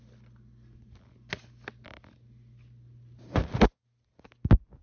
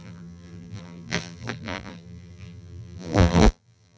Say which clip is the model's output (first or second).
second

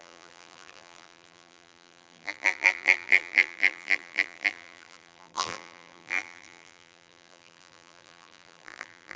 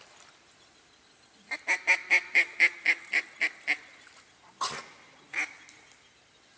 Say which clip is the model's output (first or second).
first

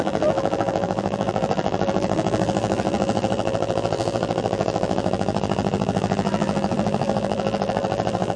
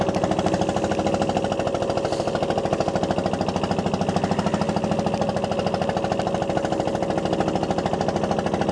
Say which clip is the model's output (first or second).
first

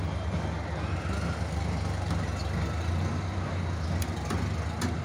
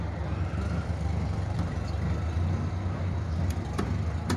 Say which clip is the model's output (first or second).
second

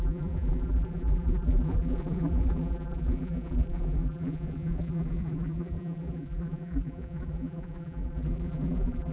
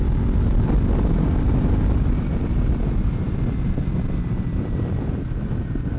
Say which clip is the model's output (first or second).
first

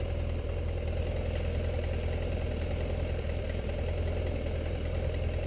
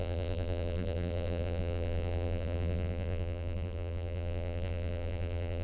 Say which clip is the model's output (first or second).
second